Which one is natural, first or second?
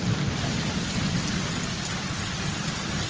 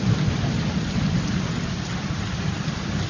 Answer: first